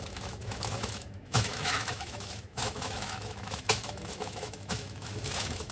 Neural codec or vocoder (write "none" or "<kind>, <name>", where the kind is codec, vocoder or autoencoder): autoencoder, DAC-VAE